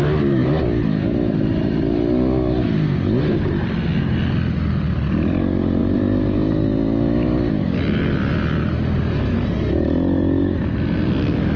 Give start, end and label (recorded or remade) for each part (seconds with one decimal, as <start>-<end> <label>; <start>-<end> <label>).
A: 0.0-11.6 recorded